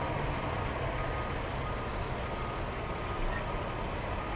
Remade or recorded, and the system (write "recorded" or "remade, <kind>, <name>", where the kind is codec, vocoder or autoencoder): recorded